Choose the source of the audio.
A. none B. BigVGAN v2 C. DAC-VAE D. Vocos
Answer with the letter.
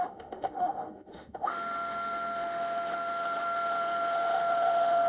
C